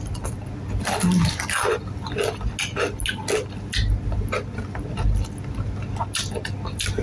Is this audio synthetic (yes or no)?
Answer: no